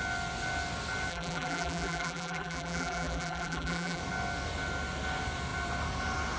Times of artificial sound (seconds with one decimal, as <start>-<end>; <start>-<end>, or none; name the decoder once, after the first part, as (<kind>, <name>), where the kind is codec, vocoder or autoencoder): 1.1-4.0 (vocoder, BigVGAN v2)